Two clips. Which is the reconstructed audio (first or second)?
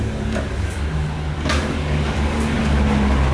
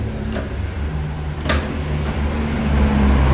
first